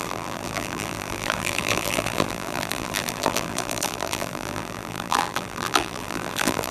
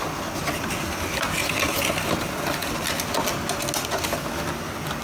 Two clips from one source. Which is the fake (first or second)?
first